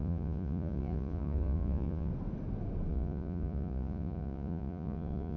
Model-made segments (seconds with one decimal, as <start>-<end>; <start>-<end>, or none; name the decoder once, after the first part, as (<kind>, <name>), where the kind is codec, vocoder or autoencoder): 0.0-2.1 (vocoder, Vocos); 2.9-5.4